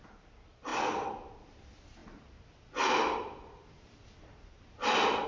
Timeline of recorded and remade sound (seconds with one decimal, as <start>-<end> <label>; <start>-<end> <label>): 0.0-5.3 recorded